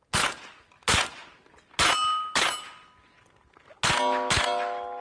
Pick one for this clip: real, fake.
real